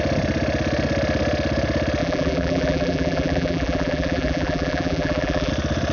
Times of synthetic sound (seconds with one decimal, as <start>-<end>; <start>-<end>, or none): 2.0-5.5